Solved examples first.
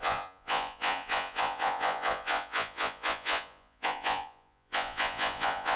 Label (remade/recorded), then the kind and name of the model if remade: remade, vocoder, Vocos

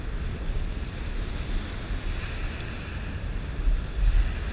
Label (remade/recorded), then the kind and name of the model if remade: recorded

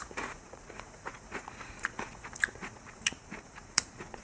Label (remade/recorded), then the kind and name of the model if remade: remade, vocoder, Vocos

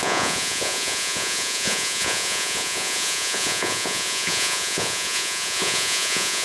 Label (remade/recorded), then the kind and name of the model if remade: remade, vocoder, Vocos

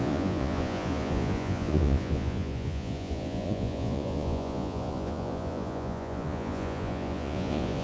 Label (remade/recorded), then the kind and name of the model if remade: remade, vocoder, Vocos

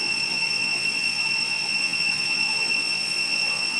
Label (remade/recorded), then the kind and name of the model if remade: remade, vocoder, Vocos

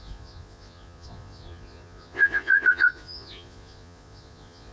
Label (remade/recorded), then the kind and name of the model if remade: remade, vocoder, Vocos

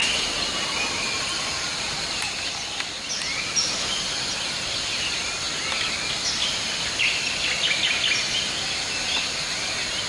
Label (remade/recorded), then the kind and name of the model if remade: recorded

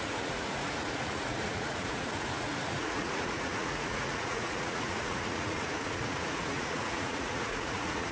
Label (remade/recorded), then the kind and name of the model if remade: remade, vocoder, Vocos